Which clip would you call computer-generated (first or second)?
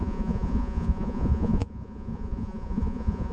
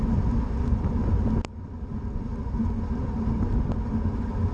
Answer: first